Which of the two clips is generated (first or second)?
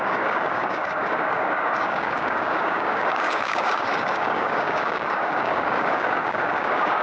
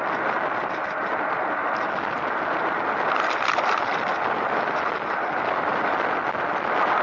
first